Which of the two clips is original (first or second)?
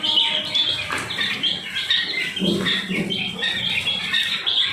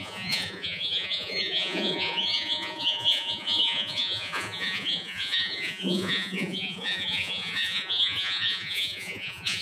first